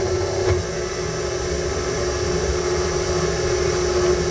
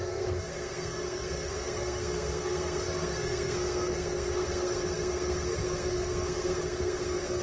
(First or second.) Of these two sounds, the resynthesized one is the second